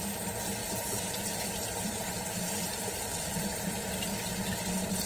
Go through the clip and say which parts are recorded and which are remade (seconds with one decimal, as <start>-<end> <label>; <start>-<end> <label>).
0.0-0.6 recorded; 0.6-3.7 remade; 3.7-5.1 recorded